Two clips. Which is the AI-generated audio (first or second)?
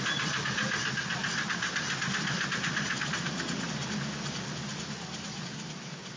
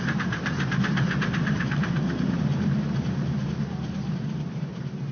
second